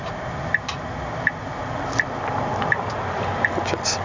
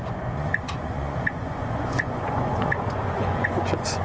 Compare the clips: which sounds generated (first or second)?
second